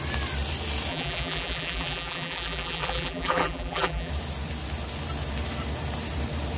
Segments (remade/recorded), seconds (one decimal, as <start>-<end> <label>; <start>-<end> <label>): 0.0-0.9 recorded; 0.9-4.1 remade; 4.1-6.6 recorded